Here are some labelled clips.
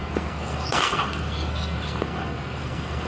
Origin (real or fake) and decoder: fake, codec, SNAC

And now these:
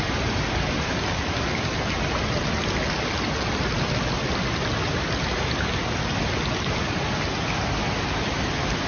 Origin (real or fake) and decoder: real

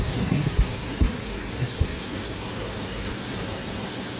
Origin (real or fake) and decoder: fake, codec, SNAC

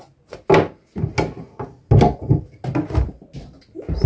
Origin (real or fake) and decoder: real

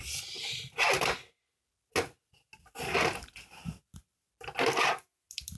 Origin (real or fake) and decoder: real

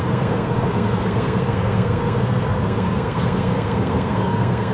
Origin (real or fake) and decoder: fake, codec, SNAC